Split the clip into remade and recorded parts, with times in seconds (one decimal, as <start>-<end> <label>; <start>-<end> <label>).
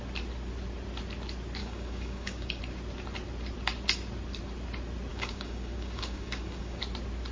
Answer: 0.0-1.6 recorded; 1.6-2.6 remade; 2.6-5.1 recorded; 5.1-6.8 remade; 6.8-7.3 recorded